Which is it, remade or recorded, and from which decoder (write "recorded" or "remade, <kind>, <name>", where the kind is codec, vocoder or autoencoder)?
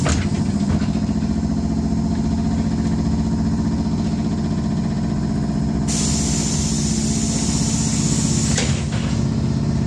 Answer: recorded